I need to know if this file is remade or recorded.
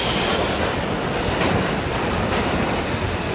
recorded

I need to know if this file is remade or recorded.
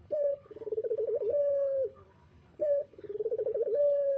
remade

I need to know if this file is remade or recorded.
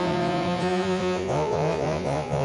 remade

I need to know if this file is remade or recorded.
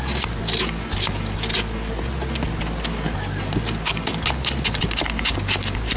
recorded